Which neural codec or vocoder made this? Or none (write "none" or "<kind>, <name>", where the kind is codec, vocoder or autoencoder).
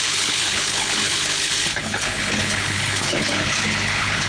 codec, HILCodec